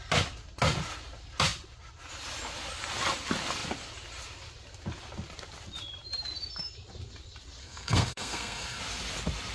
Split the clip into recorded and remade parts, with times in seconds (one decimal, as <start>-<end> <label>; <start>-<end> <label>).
0.0-7.6 recorded; 7.6-8.8 remade; 8.8-9.5 recorded